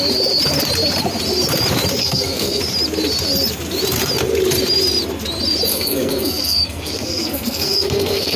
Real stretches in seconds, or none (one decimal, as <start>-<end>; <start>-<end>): 0.0-2.0; 2.6-5.7